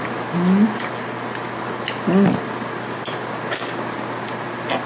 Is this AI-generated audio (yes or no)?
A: no